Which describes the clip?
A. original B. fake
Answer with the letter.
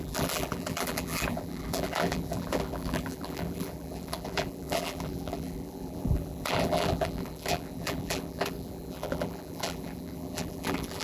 B